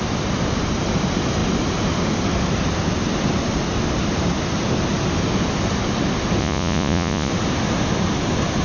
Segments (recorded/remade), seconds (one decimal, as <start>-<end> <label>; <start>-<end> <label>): 0.0-6.4 recorded; 6.4-7.3 remade; 7.3-8.6 recorded